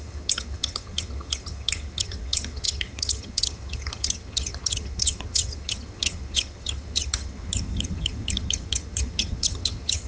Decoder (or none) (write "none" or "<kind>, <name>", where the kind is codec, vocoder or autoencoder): vocoder, HiFi-GAN